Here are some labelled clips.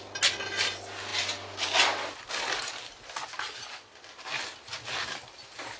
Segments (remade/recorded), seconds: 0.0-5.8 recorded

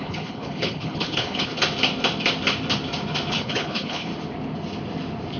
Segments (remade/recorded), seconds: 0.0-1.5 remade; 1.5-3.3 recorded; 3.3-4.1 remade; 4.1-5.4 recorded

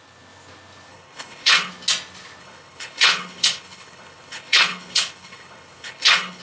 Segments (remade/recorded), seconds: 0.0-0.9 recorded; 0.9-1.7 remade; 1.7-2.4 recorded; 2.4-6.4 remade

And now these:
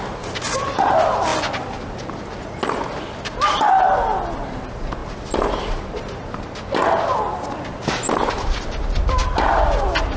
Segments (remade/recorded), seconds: 0.0-10.2 recorded

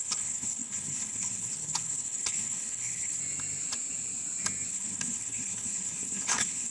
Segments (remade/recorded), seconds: 0.0-3.2 remade; 3.2-4.7 recorded; 4.7-6.7 remade